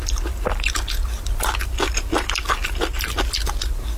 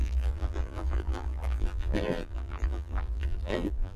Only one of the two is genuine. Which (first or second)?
first